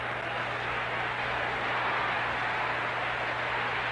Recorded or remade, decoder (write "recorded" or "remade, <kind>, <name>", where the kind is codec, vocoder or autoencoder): recorded